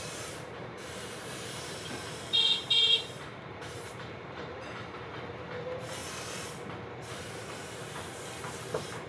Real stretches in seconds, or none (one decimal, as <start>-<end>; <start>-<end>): 6.0-7.1